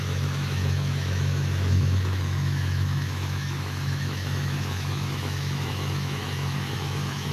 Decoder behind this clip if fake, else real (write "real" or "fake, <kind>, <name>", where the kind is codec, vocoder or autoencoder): fake, autoencoder, DAC-VAE